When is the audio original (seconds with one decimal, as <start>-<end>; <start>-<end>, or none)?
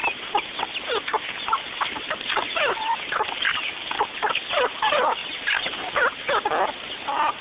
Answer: 0.0-2.6; 5.2-6.6